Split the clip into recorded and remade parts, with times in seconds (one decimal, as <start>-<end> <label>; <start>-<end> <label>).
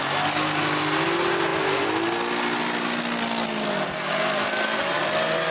0.0-5.5 recorded